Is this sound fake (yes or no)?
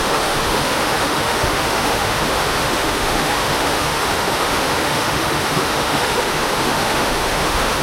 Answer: yes